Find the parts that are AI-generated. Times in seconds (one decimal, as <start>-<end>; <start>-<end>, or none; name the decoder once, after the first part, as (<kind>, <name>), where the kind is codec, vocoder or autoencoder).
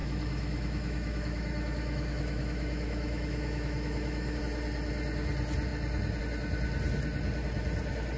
0.0-4.4 (autoencoder, DAC-VAE)